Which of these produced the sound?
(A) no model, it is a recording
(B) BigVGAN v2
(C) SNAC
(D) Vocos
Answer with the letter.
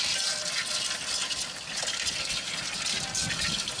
A